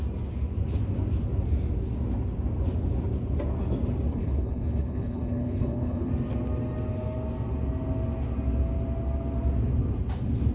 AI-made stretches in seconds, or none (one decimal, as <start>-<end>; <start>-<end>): 4.1-6.1